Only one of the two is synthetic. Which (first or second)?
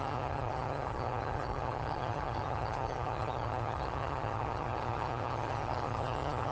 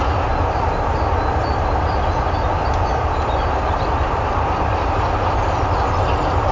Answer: first